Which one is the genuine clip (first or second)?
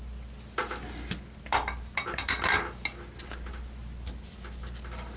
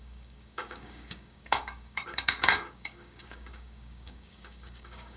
first